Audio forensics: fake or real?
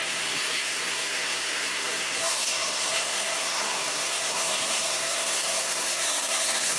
fake